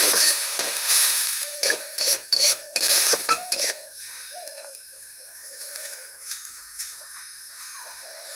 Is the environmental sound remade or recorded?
remade